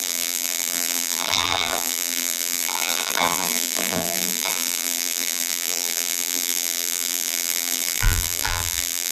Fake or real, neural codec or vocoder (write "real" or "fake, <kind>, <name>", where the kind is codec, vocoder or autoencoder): fake, vocoder, BigVGAN v2